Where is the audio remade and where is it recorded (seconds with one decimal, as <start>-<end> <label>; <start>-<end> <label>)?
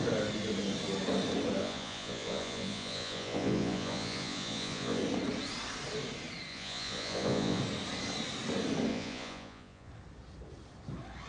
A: 0.0-1.6 recorded; 1.6-5.0 remade; 5.0-6.5 recorded; 6.5-7.6 remade; 7.6-8.9 recorded; 8.9-9.9 remade; 9.9-11.3 recorded